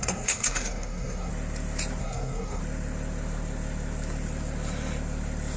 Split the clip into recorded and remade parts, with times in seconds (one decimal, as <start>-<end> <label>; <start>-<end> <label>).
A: 0.0-1.3 remade; 1.3-2.0 recorded; 2.0-2.6 remade; 2.6-5.6 recorded